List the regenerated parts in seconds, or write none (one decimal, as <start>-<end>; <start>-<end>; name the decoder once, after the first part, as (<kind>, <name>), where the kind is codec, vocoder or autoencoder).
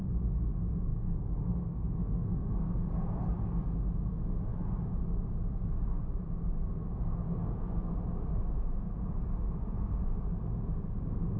0.9-2.9 (codec, SNAC); 7.2-7.9